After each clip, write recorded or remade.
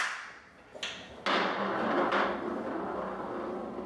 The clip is recorded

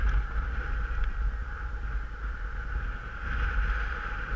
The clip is recorded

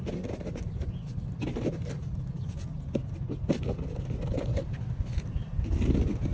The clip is recorded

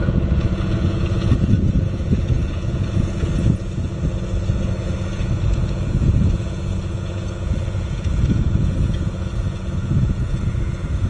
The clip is remade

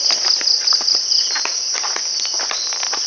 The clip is recorded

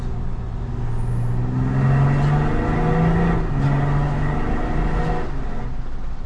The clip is recorded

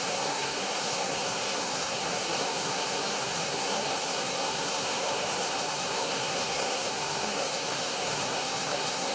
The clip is remade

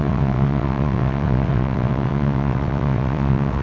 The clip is remade